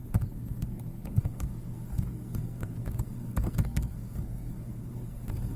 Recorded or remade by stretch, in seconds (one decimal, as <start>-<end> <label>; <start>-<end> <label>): 0.0-5.6 remade